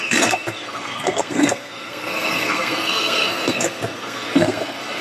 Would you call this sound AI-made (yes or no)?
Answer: yes